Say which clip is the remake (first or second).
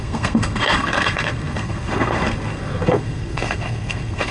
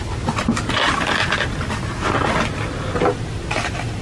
first